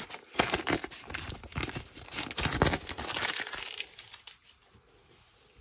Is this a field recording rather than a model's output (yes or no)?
yes